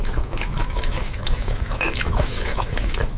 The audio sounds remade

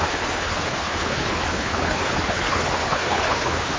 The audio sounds remade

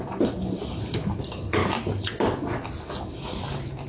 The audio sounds recorded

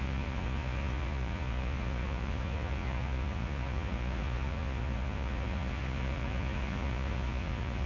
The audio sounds remade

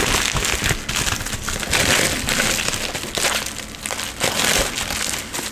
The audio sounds recorded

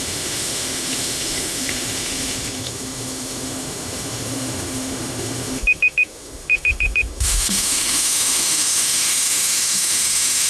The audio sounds remade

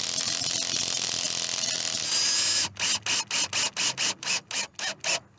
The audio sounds recorded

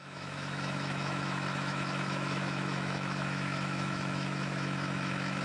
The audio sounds remade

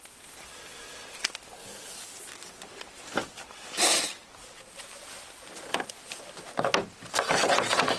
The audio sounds recorded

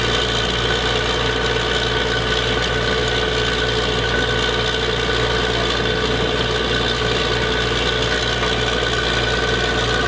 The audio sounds recorded